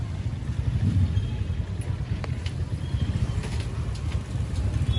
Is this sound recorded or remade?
recorded